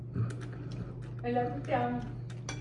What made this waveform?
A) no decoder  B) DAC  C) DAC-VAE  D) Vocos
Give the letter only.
A